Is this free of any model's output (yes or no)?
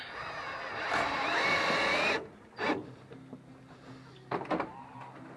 yes